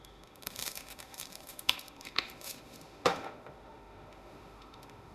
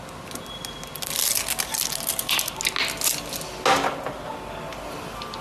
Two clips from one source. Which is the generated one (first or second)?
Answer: first